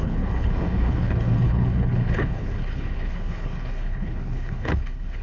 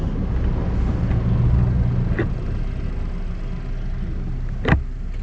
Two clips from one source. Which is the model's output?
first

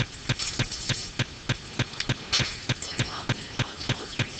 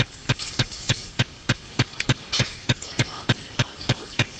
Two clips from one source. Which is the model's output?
second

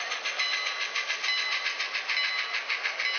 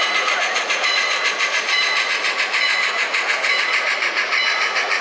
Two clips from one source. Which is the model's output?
second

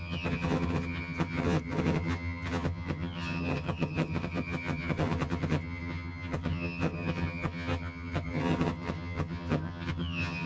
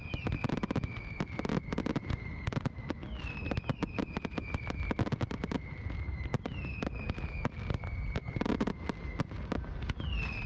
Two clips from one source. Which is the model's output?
first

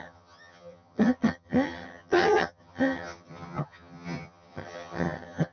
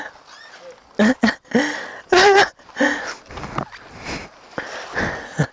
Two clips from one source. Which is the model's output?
first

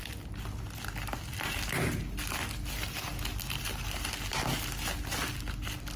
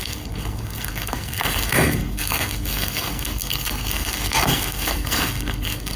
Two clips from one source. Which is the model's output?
second